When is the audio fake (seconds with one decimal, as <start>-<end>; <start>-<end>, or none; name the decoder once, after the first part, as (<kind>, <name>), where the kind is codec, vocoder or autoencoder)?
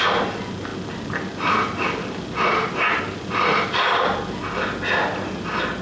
none